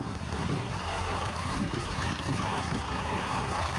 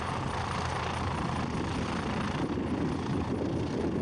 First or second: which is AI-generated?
first